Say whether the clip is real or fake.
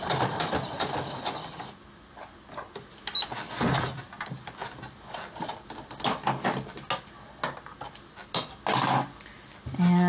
real